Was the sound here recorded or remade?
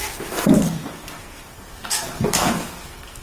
remade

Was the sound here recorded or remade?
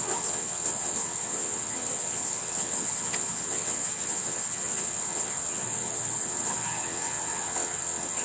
remade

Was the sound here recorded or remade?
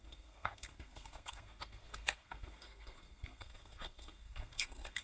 remade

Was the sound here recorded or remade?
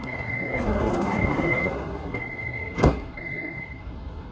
remade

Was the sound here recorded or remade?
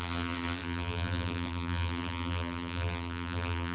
remade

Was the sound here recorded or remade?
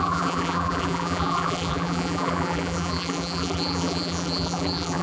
remade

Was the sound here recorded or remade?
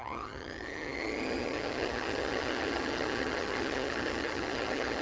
remade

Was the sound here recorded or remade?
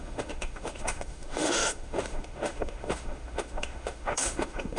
remade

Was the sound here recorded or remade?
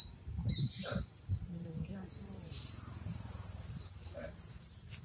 remade